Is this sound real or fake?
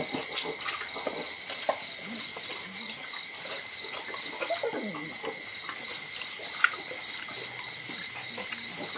real